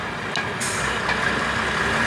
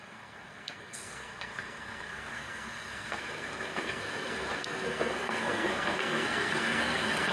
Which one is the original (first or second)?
first